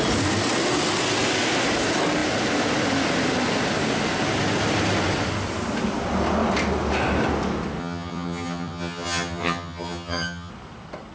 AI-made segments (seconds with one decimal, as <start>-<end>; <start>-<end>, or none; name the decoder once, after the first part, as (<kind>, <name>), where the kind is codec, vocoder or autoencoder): 7.8-10.5 (vocoder, HiFi-GAN)